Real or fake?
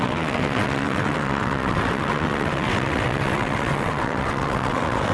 fake